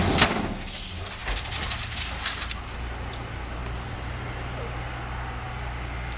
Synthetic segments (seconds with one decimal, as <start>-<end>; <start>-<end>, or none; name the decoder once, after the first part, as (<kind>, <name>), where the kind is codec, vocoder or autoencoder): none

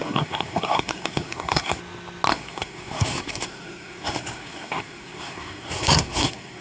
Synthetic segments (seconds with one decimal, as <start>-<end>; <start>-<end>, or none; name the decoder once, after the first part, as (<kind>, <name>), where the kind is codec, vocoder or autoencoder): 0.0-1.8 (codec, SNAC); 2.3-6.6

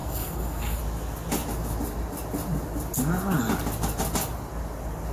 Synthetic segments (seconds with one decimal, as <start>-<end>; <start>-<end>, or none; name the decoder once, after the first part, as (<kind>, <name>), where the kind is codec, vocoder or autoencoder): 0.0-0.8 (codec, SNAC)

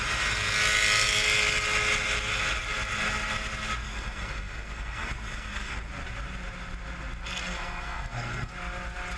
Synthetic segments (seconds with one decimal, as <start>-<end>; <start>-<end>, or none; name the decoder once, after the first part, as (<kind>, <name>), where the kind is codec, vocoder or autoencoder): 3.8-5.9 (codec, SNAC); 7.4-8.5

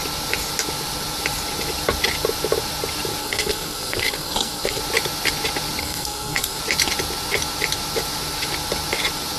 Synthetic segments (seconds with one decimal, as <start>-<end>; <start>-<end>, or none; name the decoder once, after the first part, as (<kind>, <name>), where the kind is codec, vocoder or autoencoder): 3.2-4.8 (codec, SNAC); 5.8-6.6

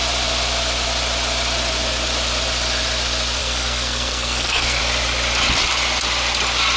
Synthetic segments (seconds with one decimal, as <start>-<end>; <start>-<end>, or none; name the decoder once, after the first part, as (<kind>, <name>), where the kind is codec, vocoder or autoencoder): 3.4-4.8 (codec, SNAC)

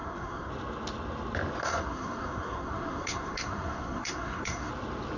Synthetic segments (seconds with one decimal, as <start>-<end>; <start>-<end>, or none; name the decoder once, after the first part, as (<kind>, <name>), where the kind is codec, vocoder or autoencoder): 0.0-0.5 (codec, SNAC); 1.6-4.7